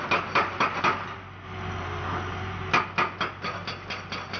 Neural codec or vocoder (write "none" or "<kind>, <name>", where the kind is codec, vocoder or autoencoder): none